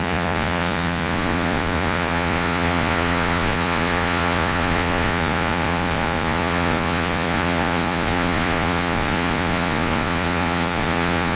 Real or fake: fake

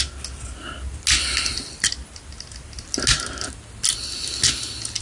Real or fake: real